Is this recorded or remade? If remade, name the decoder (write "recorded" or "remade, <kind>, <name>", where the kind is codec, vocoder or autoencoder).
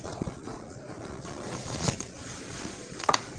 remade, vocoder, Vocos